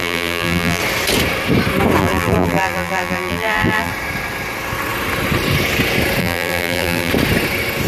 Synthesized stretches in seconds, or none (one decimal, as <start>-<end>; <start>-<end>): 0.0-0.8; 2.0-3.9; 6.2-7.1